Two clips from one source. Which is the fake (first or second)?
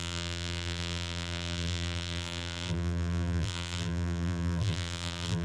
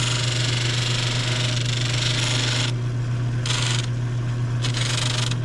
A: first